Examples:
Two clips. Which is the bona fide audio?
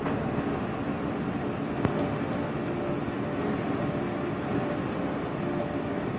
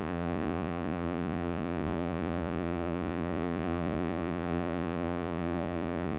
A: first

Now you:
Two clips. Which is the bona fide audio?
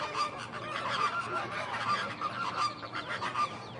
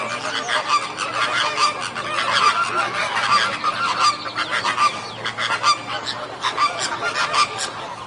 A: second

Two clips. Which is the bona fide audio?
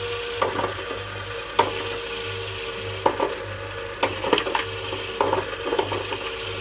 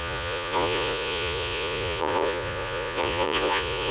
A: first